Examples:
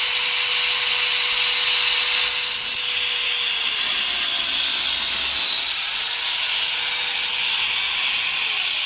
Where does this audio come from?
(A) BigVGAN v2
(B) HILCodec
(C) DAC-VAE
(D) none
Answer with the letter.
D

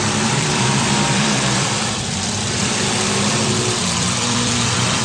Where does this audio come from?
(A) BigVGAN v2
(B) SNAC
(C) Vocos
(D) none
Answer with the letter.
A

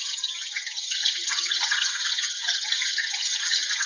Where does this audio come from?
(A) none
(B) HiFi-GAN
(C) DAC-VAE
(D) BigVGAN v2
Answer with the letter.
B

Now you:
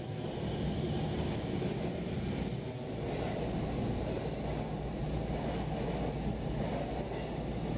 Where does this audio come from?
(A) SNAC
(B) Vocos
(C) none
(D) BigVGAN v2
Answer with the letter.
C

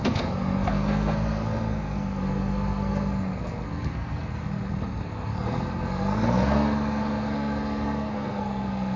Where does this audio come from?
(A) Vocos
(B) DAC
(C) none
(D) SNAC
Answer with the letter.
D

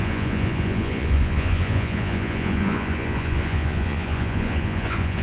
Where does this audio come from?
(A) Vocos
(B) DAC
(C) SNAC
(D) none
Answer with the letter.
A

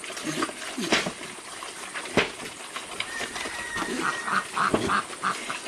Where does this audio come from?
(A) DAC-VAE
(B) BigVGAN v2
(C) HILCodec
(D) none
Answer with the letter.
D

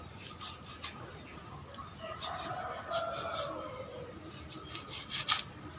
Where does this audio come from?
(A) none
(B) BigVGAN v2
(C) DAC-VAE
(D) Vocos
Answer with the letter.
A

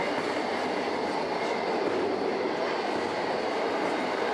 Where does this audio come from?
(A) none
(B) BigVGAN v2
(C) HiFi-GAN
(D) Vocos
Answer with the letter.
A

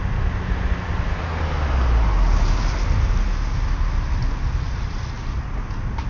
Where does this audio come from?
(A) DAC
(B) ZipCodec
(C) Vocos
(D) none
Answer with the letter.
D